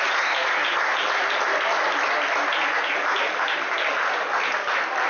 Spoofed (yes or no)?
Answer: no